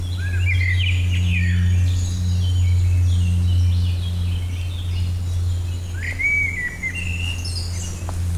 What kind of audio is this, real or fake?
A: real